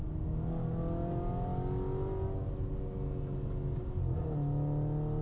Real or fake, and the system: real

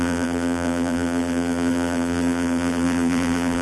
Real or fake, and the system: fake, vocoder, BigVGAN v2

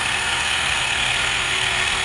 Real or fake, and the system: fake, codec, SNAC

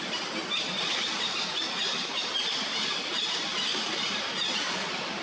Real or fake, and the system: fake, vocoder, BigVGAN v2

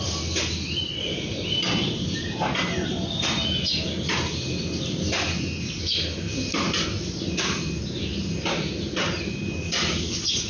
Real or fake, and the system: real